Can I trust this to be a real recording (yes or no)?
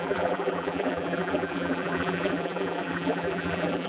no